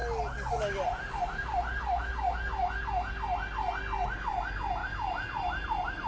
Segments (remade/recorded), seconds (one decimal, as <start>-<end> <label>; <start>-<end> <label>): 0.0-4.8 recorded; 4.8-6.1 remade